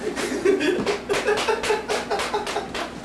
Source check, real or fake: real